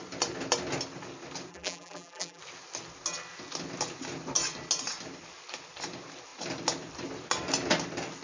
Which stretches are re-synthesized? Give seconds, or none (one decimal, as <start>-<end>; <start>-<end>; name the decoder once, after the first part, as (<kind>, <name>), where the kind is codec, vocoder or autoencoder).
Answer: 1.5-2.4 (vocoder, BigVGAN v2)